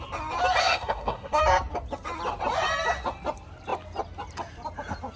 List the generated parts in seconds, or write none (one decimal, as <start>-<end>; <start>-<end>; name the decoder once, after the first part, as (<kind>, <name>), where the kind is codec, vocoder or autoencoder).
0.6-1.4 (codec, SNAC)